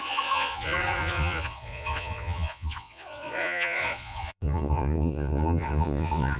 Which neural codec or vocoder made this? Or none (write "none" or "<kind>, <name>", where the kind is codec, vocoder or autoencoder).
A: vocoder, Vocos